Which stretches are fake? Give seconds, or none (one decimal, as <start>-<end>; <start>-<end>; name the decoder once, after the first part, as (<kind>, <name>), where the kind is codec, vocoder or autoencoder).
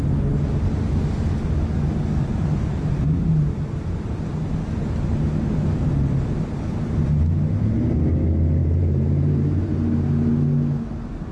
8.6-9.7 (vocoder, BigVGAN v2)